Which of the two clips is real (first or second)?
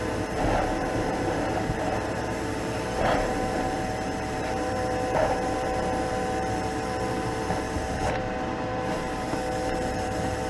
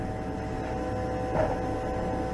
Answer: second